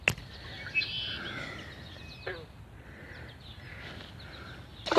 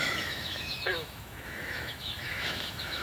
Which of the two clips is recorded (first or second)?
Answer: first